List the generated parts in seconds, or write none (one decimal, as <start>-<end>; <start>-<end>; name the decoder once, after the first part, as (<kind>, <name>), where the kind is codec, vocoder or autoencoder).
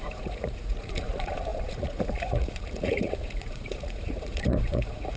0.0-5.2 (vocoder, Vocos)